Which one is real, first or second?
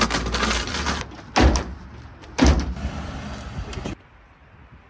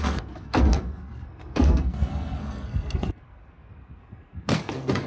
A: first